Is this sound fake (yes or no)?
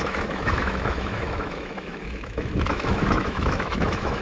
yes